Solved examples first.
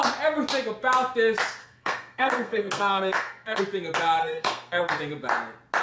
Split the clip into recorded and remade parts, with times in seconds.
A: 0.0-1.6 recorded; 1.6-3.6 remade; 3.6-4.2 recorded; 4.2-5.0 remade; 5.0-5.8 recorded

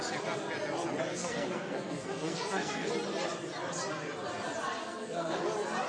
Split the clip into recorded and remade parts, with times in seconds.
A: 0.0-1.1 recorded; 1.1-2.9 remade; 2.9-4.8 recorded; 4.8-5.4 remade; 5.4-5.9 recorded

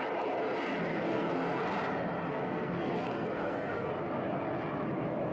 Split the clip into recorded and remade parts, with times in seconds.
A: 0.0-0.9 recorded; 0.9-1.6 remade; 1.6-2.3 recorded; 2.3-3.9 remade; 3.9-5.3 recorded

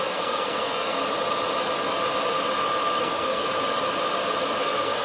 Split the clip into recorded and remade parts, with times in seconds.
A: 0.0-1.0 remade; 1.0-3.0 recorded; 3.0-3.5 remade; 3.5-4.6 recorded; 4.6-5.0 remade

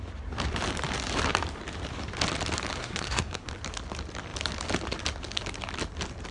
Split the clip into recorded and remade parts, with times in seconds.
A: 0.0-2.8 recorded; 2.8-3.5 remade; 3.5-6.3 recorded